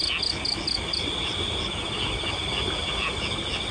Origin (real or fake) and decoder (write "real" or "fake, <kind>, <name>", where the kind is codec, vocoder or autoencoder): real